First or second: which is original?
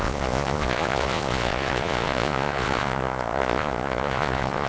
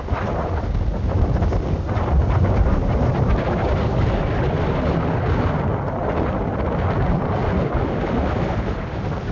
second